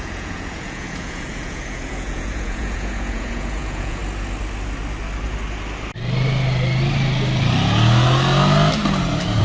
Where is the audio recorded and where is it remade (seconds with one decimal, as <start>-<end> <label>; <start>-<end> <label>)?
0.0-4.0 remade; 4.0-9.4 recorded